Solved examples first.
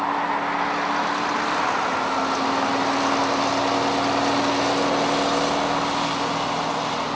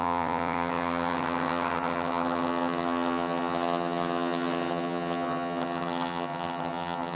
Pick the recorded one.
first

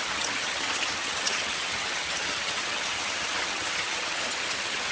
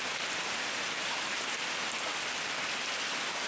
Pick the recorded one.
second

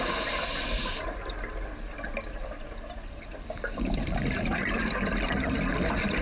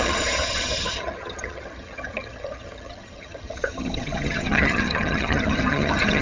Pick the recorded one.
first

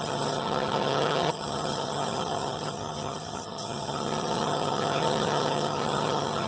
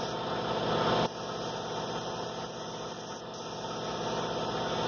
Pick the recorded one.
second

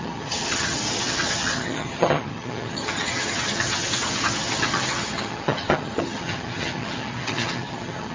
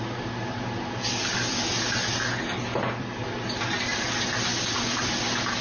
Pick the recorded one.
second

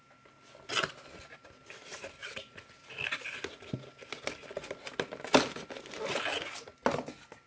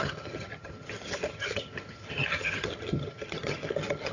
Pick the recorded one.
first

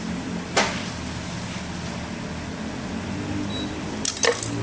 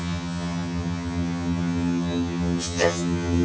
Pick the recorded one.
first